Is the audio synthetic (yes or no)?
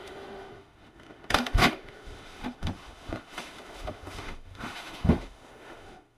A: yes